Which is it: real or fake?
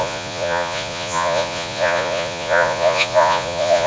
fake